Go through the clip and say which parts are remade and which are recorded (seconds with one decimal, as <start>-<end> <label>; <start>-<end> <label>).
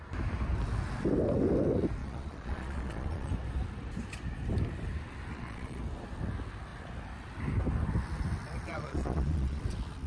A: 0.0-2.0 recorded; 2.0-3.3 remade; 3.3-5.3 recorded; 5.3-5.8 remade; 5.8-8.7 recorded; 8.7-9.6 remade; 9.6-10.1 recorded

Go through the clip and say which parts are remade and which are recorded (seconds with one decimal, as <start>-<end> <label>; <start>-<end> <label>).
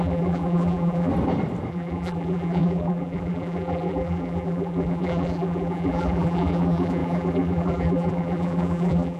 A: 0.0-1.1 remade; 1.1-1.7 recorded; 1.7-9.2 remade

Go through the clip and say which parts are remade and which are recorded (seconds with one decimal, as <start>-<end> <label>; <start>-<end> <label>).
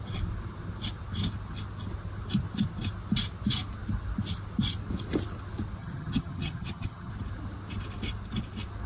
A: 0.0-5.8 recorded; 5.8-7.1 remade; 7.1-8.9 recorded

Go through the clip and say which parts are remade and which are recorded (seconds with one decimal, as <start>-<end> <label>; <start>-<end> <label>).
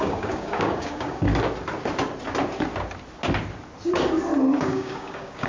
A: 0.0-1.3 remade; 1.3-4.6 recorded; 4.6-5.5 remade